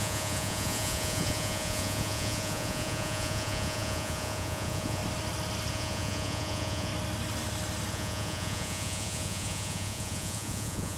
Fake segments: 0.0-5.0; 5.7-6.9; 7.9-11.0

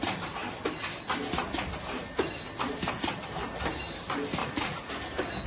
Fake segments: 4.4-4.9

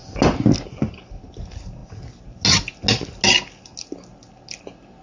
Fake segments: none

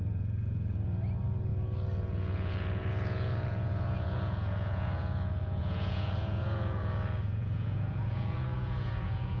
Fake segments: 0.0-9.4

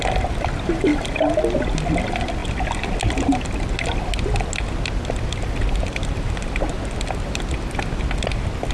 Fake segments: none

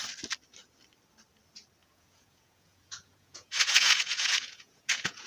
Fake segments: 1.8-5.3

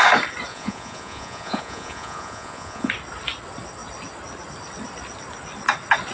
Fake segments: 0.5-2.9